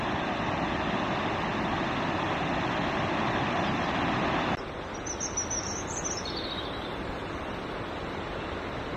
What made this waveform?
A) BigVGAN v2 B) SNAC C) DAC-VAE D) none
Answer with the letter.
D